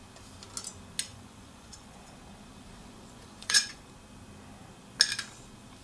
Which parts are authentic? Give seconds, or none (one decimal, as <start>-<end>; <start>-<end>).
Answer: 0.0-1.1; 2.0-2.8; 3.8-5.8